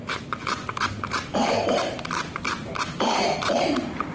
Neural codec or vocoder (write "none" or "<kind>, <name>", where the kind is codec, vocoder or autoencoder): vocoder, BigVGAN v2